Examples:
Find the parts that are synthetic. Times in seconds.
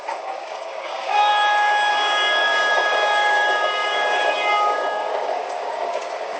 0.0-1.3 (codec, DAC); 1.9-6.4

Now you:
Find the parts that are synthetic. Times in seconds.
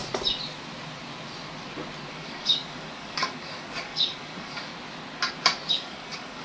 2.1-4.7 (codec, DAC); 5.7-6.4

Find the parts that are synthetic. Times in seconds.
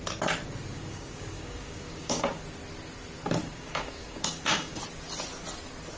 0.7-2.4 (codec, DAC); 3.4-4.8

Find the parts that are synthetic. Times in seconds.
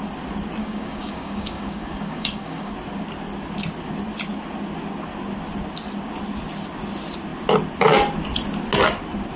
0.6-2.7 (codec, DAC)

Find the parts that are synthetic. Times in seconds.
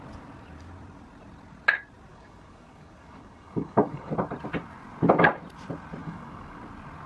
2.1-4.1 (codec, DAC); 6.0-6.6